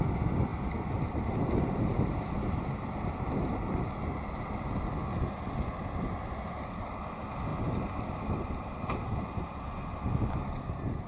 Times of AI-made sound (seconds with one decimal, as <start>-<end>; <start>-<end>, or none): none